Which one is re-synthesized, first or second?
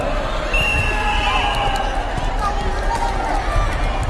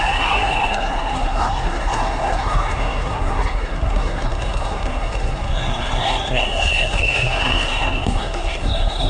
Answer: second